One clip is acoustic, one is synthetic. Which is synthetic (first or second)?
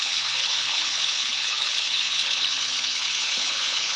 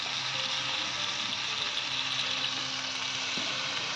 first